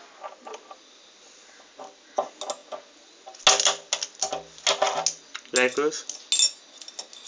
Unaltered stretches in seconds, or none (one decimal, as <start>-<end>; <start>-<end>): 0.0-7.3